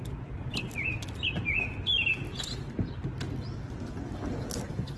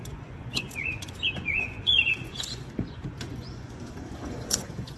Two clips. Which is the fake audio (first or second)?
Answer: second